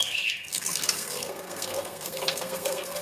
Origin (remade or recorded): remade